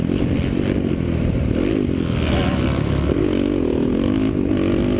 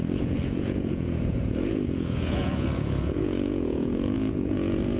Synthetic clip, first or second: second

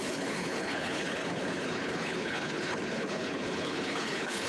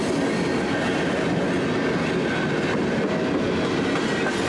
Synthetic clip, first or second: first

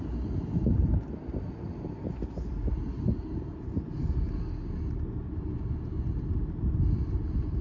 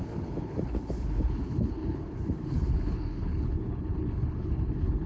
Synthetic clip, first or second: second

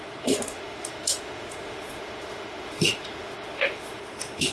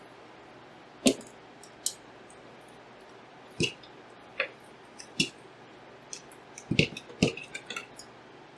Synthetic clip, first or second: first